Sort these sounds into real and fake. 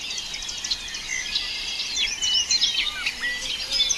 real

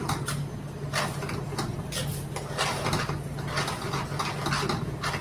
real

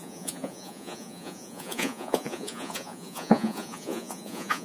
fake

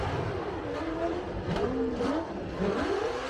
fake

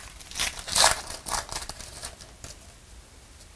real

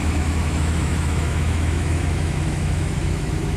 fake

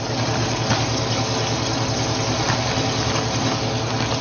real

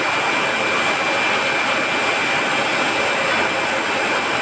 real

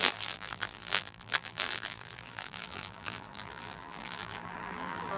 fake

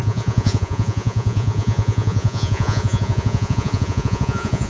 fake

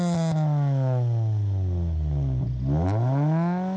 real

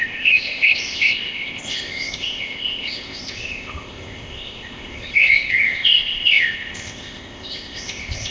fake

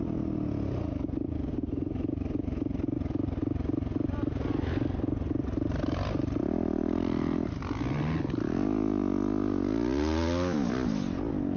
real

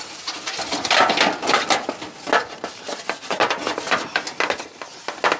real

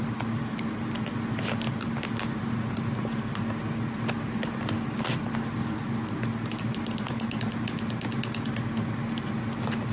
real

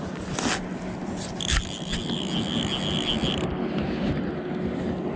real